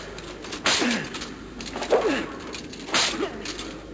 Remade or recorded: recorded